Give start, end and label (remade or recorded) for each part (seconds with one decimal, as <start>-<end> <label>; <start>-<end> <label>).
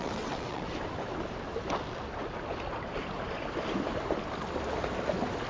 0.0-0.7 remade; 0.7-5.5 recorded